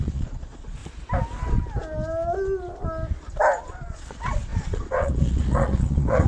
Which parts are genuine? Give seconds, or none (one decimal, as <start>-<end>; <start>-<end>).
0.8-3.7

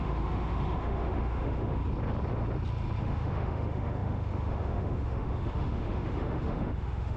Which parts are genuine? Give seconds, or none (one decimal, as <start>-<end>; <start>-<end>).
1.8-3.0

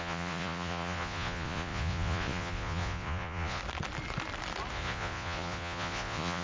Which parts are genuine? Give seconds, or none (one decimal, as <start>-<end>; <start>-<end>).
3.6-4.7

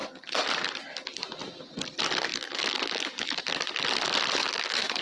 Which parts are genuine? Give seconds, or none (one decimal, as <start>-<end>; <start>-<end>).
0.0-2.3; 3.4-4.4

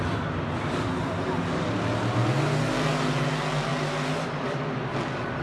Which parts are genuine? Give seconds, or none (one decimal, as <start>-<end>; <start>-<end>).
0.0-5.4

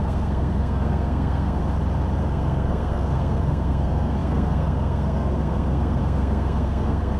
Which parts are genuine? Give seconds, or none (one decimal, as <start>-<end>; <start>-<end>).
1.6-2.2

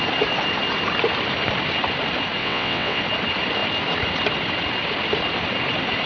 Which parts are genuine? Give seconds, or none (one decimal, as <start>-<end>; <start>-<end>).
0.0-2.4; 3.0-6.1

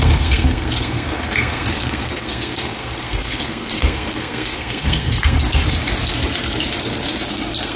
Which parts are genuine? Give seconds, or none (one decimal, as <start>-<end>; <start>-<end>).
5.6-7.3